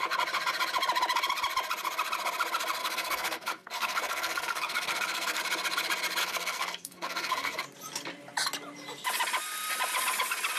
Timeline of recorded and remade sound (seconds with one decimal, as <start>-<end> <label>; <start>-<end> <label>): 0.0-2.8 recorded; 2.8-5.4 remade; 5.4-6.2 recorded; 6.2-7.6 remade; 7.6-10.6 recorded